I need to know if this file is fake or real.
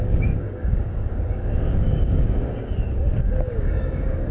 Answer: fake